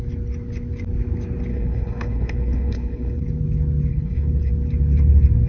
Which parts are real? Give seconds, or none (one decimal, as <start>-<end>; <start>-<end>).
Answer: 0.0-1.5; 3.2-3.9; 4.5-5.5